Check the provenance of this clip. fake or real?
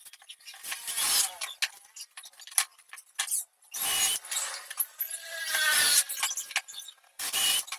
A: real